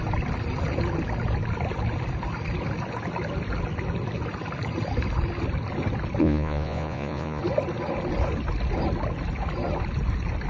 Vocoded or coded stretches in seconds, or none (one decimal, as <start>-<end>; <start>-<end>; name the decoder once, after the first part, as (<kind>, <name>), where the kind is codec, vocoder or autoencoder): 6.2-7.4 (vocoder, Vocos)